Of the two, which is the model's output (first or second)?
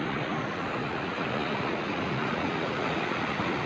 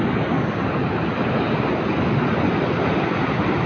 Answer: first